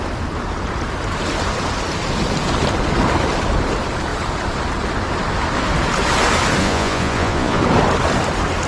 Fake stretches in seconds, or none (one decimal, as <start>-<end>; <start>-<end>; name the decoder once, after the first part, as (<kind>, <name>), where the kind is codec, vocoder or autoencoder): 6.6-7.6 (vocoder, Vocos)